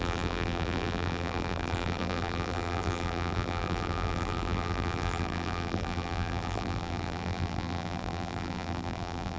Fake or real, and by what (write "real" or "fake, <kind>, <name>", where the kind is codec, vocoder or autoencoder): fake, vocoder, BigVGAN v2